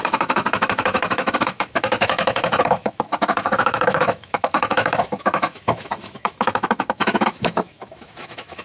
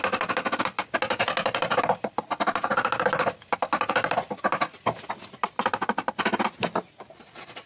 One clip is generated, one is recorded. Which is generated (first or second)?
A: first